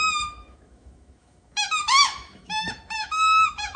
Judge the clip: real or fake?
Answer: fake